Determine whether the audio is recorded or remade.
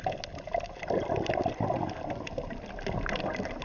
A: recorded